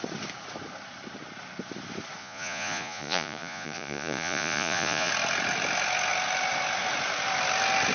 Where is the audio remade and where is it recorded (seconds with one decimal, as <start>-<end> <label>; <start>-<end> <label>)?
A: 0.0-2.2 recorded; 2.2-5.1 remade; 5.1-7.9 recorded